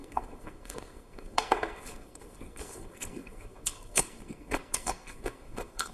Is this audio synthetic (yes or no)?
yes